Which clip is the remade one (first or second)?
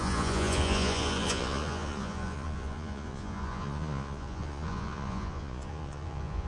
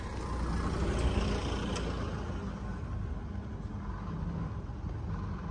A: first